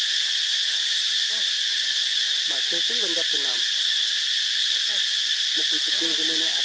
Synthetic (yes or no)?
no